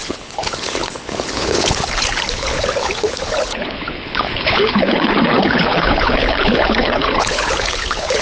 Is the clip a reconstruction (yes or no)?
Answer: yes